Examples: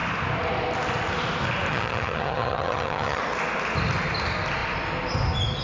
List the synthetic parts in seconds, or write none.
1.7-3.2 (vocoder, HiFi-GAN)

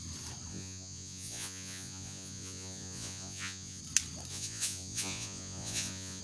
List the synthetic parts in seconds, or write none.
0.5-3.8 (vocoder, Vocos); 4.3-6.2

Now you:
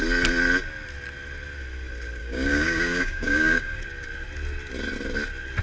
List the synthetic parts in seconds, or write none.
2.2-3.8 (codec, DAC)

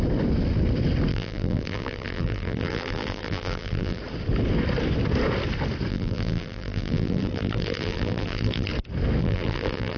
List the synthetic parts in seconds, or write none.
1.1-4.0 (vocoder, BigVGAN v2); 5.9-8.7; 9.2-10.0